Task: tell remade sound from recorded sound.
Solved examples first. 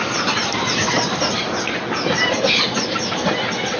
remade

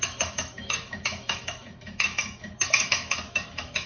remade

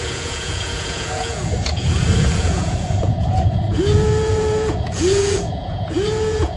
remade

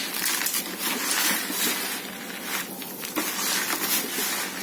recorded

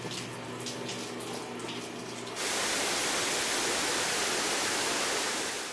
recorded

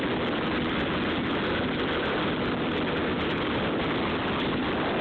recorded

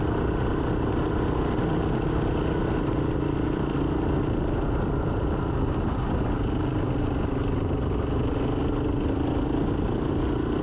recorded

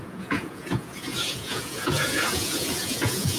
remade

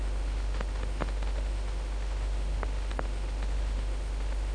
remade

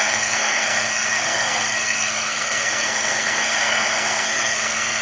remade